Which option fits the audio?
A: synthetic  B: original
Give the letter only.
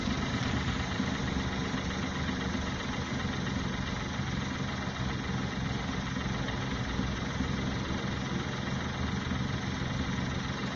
B